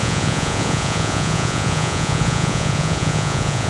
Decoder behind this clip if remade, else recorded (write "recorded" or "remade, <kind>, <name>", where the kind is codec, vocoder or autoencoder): remade, vocoder, Vocos